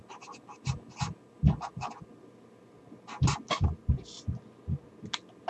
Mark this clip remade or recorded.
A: recorded